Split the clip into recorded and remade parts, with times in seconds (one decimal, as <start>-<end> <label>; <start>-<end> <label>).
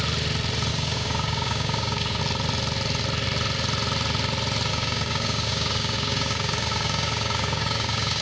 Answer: 0.0-0.7 recorded; 0.7-2.2 remade; 2.2-4.7 recorded; 4.7-8.2 remade